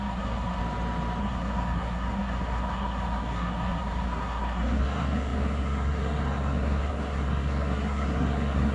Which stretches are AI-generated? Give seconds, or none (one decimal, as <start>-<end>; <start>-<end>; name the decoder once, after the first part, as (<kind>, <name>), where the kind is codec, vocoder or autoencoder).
0.0-0.6 (codec, SNAC); 1.2-8.7